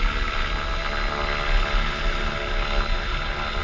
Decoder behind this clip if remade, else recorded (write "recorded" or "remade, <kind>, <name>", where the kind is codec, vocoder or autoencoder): recorded